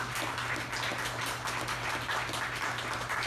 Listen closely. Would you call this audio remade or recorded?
recorded